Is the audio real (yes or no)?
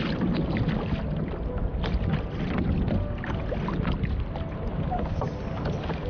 yes